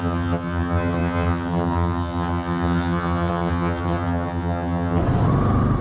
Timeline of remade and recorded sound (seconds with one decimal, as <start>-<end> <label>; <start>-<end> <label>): 0.0-5.0 remade; 5.0-5.8 recorded